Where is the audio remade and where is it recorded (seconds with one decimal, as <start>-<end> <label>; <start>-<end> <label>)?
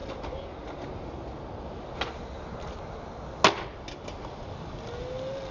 0.0-5.5 recorded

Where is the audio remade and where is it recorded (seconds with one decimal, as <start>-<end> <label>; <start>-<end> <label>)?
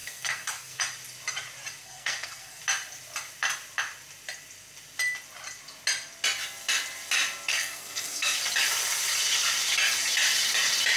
0.0-0.8 remade; 0.8-1.8 recorded; 1.8-2.6 remade; 2.6-7.5 recorded; 7.5-8.4 remade; 8.4-11.0 recorded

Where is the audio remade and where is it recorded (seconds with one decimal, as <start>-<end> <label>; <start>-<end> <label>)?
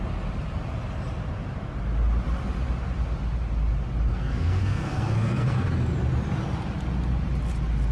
0.0-4.1 recorded; 4.1-5.7 remade; 5.7-7.9 recorded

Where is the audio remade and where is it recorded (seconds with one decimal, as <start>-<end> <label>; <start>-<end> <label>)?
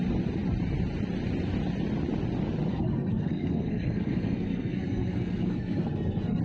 0.0-2.7 recorded; 2.7-6.4 remade